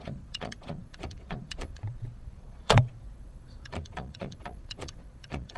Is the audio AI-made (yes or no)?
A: yes